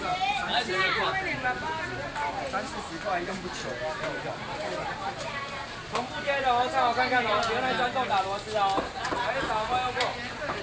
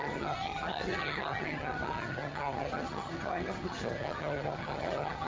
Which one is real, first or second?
first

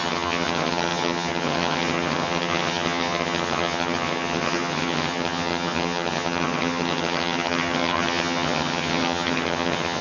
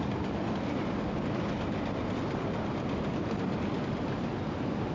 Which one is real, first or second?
second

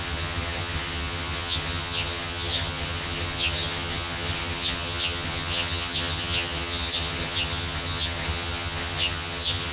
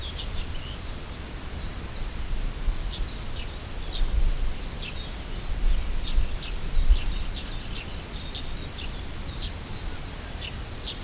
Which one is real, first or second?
second